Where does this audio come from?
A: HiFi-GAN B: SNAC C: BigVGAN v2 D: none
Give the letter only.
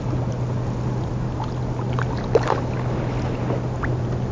D